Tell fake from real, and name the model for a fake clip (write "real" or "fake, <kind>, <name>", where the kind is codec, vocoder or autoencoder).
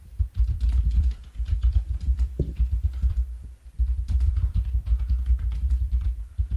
fake, vocoder, BigVGAN v2